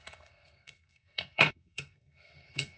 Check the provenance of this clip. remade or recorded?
remade